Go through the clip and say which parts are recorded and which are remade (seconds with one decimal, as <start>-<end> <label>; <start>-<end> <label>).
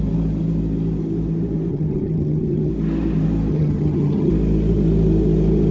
0.0-1.7 recorded; 1.7-2.7 remade; 2.7-3.5 recorded; 3.5-4.3 remade; 4.3-5.7 recorded